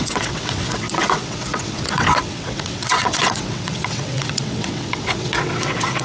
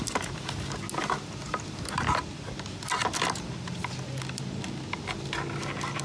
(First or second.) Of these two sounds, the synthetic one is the first